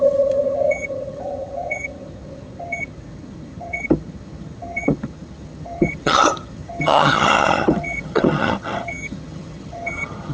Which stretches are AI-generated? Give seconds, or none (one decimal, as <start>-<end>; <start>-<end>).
0.0-10.3